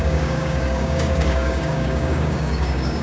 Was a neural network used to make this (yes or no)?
yes